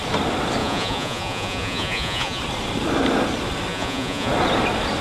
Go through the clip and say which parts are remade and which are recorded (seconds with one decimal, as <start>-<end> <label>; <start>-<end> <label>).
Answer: 0.0-0.6 recorded; 0.6-2.4 remade; 2.4-3.7 recorded; 3.7-4.3 remade; 4.3-5.0 recorded